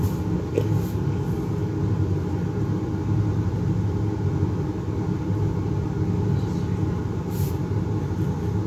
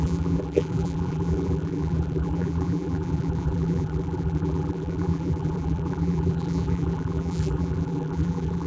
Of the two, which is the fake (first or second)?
second